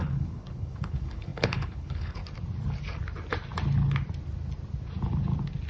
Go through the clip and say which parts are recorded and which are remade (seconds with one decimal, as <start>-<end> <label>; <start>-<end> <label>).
0.0-2.2 remade; 2.2-5.7 recorded

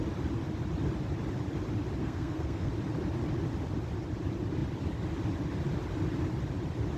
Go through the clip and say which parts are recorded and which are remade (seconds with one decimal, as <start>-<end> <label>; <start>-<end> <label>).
0.0-2.0 recorded; 2.0-2.7 remade; 2.7-7.0 recorded

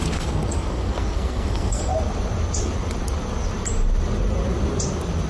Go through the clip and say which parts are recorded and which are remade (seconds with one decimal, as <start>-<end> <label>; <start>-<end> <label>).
0.0-1.9 remade; 1.9-5.3 recorded

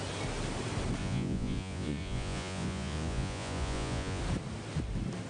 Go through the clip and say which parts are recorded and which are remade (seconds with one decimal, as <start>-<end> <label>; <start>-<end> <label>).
0.0-1.0 recorded; 1.0-4.2 remade; 4.2-5.3 recorded

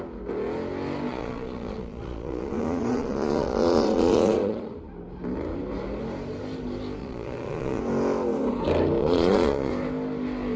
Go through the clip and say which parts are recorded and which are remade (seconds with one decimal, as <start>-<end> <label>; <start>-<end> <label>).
0.0-1.1 recorded; 1.1-4.7 remade; 4.7-7.0 recorded; 7.0-7.8 remade; 7.8-9.0 recorded; 9.0-9.7 remade; 9.7-10.6 recorded

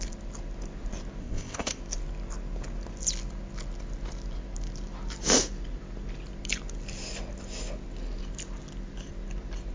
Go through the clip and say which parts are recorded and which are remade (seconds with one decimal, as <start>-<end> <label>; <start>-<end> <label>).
0.0-1.2 recorded; 1.2-1.8 remade; 1.8-9.7 recorded

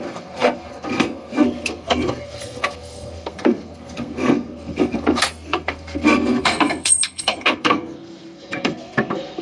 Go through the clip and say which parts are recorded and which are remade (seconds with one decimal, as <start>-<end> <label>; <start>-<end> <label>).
0.0-9.4 remade